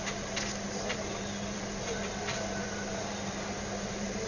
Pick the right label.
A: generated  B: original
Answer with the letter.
B